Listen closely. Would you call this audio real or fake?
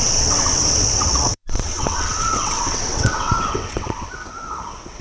fake